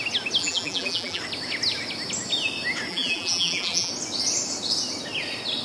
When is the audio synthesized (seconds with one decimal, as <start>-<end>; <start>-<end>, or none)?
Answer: 0.4-1.2; 2.9-3.9